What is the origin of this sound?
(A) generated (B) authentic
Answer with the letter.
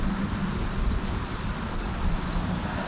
B